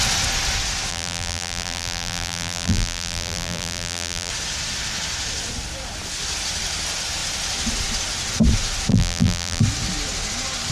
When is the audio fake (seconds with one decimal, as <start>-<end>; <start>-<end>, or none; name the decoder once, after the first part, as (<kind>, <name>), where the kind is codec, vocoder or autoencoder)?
0.9-4.3 (vocoder, BigVGAN v2); 8.9-9.6